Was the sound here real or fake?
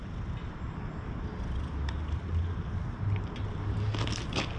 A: real